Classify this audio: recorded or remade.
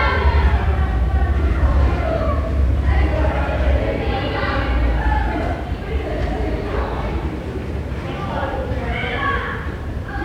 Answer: remade